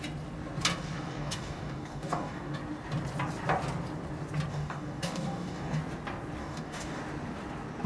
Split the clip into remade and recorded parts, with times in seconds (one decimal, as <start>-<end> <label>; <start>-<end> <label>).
0.0-1.1 recorded; 1.1-2.5 remade; 2.5-4.5 recorded; 4.5-5.8 remade; 5.8-6.4 recorded; 6.4-7.0 remade; 7.0-7.9 recorded